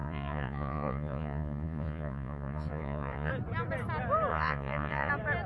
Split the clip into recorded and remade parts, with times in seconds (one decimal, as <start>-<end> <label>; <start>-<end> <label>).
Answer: 0.0-3.3 remade; 3.3-4.3 recorded; 4.3-5.1 remade; 5.1-5.5 recorded